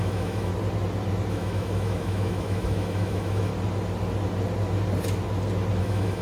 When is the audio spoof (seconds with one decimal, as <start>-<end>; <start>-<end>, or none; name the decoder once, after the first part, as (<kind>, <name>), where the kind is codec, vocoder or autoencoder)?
0.0-0.5 (autoencoder, DAC-VAE); 1.3-3.5; 5.8-6.2